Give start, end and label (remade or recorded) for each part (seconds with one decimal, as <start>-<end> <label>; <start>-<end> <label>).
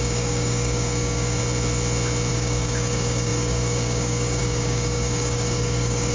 0.0-1.4 remade; 1.4-2.3 recorded; 2.3-6.1 remade